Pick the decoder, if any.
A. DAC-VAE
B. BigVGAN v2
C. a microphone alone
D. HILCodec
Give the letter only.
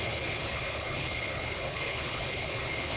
D